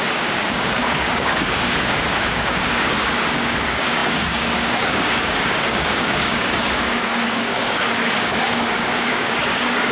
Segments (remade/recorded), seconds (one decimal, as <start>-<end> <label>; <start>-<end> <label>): 0.0-9.9 remade